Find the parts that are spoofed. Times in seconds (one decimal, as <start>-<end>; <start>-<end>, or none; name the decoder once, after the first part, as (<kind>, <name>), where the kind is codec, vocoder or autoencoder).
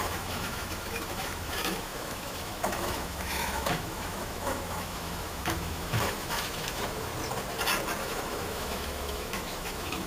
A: 0.0-7.1 (autoencoder, DAC-VAE); 8.0-10.1